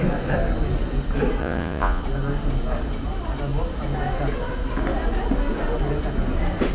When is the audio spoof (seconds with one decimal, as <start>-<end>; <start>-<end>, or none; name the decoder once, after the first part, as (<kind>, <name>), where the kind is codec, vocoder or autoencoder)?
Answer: 1.4-2.0 (vocoder, Vocos)